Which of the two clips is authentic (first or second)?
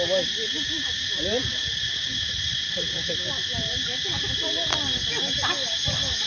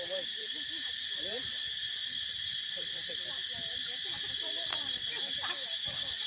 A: first